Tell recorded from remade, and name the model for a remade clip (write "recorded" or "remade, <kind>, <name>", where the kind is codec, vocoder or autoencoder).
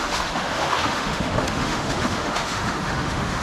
remade, autoencoder, DAC-VAE